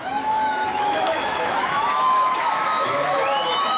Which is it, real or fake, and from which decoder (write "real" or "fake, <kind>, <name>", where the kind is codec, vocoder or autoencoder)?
fake, autoencoder, DAC-VAE